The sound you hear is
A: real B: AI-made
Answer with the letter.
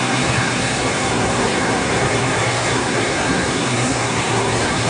B